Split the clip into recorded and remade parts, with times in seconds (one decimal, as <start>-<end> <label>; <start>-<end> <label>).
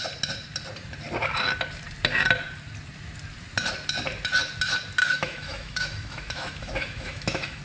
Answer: 0.0-5.0 recorded; 5.0-7.6 remade